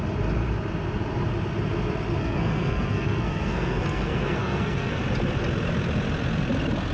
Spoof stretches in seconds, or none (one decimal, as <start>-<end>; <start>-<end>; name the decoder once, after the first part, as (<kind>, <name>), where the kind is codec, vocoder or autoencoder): 2.2-5.0 (codec, SNAC)

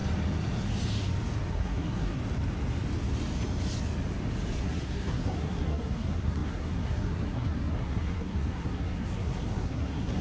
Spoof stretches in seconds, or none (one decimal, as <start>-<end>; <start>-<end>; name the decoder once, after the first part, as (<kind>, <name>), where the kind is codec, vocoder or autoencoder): 1.5-2.2 (codec, SNAC); 4.6-10.2